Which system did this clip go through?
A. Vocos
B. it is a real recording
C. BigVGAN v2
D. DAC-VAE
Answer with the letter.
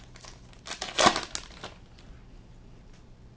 B